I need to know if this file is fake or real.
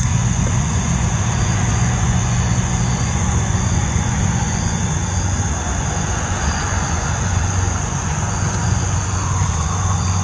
fake